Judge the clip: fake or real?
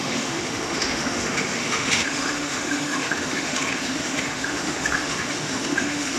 fake